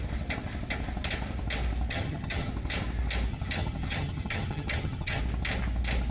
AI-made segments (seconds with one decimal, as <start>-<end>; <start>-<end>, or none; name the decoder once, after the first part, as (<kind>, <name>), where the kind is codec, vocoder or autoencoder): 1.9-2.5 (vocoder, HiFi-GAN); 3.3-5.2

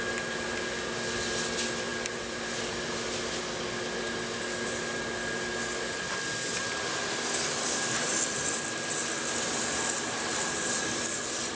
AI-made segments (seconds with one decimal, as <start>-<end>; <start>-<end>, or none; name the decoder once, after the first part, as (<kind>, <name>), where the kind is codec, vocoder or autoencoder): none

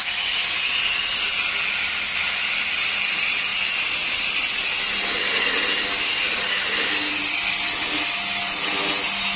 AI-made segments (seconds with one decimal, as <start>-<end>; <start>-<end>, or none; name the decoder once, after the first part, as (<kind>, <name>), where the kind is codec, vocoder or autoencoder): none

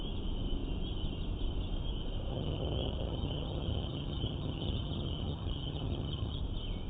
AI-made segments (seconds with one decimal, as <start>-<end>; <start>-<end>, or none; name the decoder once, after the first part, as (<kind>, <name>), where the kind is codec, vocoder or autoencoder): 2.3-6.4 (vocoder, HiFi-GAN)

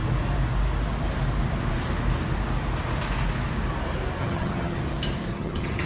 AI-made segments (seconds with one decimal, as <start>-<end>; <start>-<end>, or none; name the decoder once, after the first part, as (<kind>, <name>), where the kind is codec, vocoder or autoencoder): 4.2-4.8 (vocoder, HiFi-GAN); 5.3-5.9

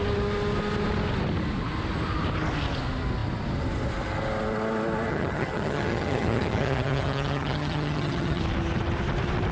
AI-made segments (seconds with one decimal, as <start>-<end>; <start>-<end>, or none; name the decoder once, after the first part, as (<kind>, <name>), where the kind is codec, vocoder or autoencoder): 5.1-8.4 (vocoder, HiFi-GAN)